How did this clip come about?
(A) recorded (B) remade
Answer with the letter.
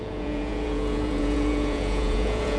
B